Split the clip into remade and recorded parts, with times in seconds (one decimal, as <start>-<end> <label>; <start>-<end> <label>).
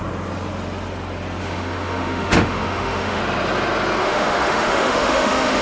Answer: 0.0-1.4 recorded; 1.4-3.2 remade; 3.2-4.0 recorded; 4.0-5.6 remade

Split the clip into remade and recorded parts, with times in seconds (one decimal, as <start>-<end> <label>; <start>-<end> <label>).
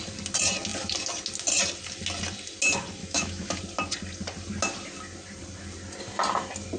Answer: 0.0-3.0 recorded; 3.0-3.6 remade; 3.6-6.8 recorded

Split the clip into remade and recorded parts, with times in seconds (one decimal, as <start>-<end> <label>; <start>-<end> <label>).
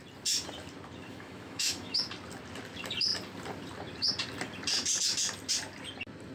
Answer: 0.0-1.1 recorded; 1.1-2.0 remade; 2.0-6.3 recorded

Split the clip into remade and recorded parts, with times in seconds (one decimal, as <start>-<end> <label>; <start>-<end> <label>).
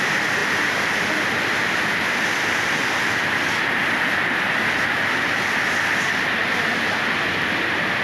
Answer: 0.0-8.0 recorded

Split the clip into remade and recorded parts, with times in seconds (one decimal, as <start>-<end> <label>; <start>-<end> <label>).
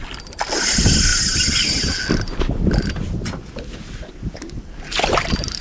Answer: 0.0-5.6 recorded